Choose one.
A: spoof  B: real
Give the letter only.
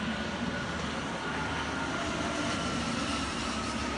B